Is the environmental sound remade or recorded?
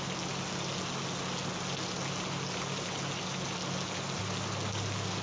recorded